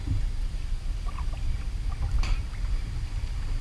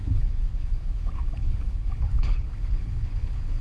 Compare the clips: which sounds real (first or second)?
first